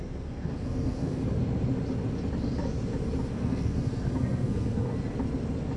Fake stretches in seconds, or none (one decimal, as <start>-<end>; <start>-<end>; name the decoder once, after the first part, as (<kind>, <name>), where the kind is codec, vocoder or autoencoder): 0.0-1.2 (codec, SNAC); 3.3-4.9